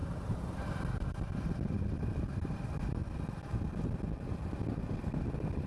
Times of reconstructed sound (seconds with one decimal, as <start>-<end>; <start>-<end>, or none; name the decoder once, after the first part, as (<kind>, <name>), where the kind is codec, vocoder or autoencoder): 1.8-3.0 (vocoder, BigVGAN v2)

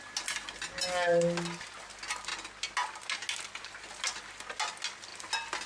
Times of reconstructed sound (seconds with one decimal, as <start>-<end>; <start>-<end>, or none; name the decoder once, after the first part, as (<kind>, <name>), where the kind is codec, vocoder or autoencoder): none

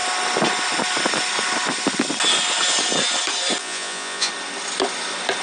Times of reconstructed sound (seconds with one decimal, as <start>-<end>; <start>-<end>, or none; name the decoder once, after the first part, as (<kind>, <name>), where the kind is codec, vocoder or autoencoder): 3.6-4.3 (vocoder, Vocos)

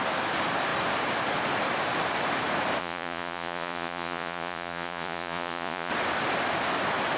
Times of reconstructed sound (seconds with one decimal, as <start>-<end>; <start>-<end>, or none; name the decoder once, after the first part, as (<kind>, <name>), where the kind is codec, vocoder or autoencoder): 2.8-5.9 (vocoder, Vocos)

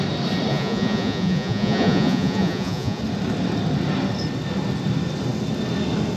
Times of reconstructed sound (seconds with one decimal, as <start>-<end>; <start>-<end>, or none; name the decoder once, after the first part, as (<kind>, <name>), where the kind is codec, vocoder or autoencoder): 0.5-3.0 (vocoder, Vocos)